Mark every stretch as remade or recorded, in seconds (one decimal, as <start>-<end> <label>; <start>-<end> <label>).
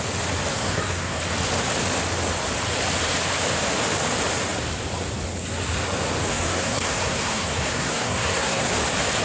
0.0-0.5 recorded; 0.5-1.2 remade; 1.2-6.3 recorded; 6.3-8.7 remade; 8.7-9.2 recorded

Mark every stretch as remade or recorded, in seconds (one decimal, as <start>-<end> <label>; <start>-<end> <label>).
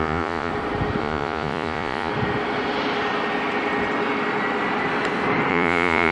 0.0-0.5 remade; 0.5-1.0 recorded; 1.0-2.1 remade; 2.1-5.5 recorded; 5.5-6.1 remade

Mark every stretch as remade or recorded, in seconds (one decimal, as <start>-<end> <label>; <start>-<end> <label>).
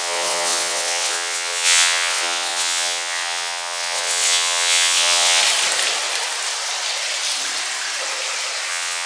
0.0-5.4 remade; 5.4-8.7 recorded; 8.7-9.1 remade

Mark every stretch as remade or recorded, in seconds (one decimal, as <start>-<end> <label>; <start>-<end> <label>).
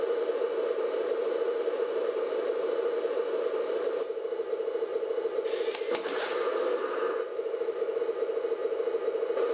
0.0-7.3 recorded; 7.3-8.0 remade; 8.0-9.5 recorded